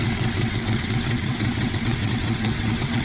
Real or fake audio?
fake